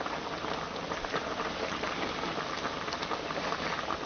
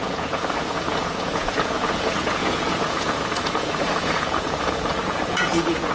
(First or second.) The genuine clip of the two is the first